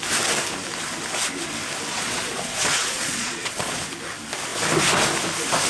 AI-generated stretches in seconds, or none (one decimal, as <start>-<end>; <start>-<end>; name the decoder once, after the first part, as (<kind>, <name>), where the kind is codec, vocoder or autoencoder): 1.9-3.8 (vocoder, Vocos)